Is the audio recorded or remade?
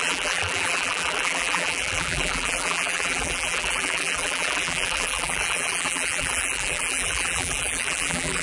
remade